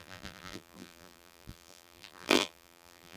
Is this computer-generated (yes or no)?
yes